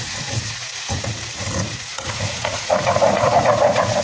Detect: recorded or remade remade